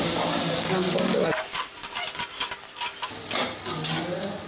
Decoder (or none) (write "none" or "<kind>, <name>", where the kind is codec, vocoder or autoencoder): none